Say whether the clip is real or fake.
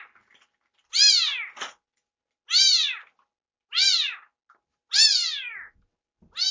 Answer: real